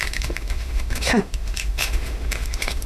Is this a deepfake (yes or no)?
yes